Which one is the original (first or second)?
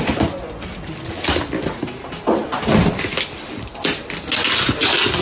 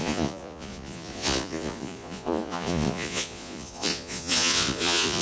first